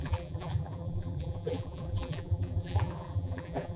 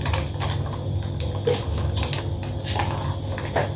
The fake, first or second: first